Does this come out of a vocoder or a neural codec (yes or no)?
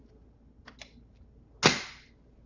no